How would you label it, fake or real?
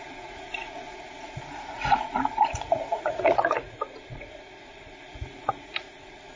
fake